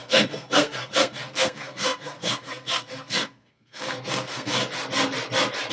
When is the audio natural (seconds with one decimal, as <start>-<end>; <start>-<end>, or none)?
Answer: 4.6-5.7